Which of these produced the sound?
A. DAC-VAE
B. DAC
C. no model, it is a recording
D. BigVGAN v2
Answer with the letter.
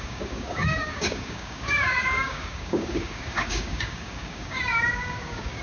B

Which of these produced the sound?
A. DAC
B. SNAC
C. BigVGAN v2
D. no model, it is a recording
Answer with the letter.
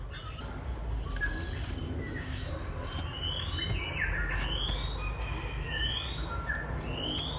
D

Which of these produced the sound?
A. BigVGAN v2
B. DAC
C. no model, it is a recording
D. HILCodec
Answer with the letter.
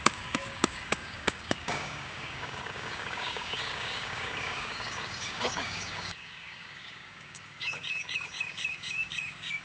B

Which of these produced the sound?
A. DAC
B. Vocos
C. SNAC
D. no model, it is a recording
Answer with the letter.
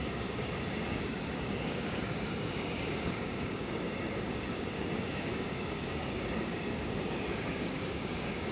A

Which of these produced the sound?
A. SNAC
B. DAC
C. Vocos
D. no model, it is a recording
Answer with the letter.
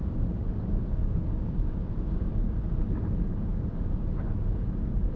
B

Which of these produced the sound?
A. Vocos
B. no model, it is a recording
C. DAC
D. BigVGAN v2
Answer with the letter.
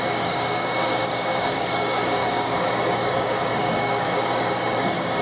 C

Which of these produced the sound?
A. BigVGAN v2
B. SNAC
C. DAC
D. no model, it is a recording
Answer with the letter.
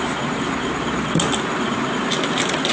D